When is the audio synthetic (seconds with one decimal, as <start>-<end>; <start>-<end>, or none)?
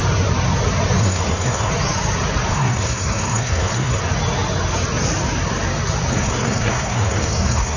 1.0-1.7; 2.5-4.0; 6.1-7.8